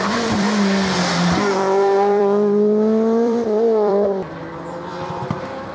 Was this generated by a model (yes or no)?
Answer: yes